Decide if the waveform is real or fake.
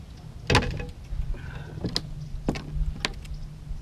real